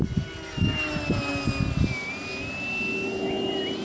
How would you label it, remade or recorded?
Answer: recorded